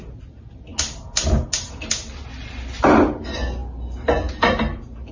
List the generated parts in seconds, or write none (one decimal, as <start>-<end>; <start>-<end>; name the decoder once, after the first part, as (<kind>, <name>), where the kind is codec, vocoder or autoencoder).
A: none